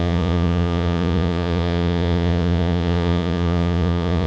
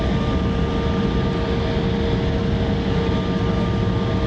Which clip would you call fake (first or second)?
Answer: first